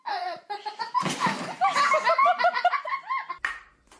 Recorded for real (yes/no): yes